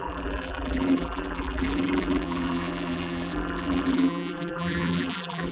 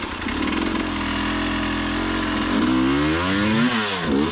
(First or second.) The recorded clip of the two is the second